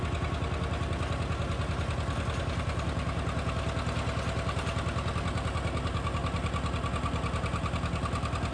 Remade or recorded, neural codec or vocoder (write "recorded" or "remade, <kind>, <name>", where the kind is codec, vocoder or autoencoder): recorded